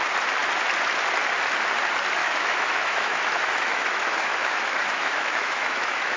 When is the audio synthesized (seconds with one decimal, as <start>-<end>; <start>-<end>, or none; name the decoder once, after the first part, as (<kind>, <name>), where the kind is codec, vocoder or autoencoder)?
2.2-6.2 (autoencoder, DAC-VAE)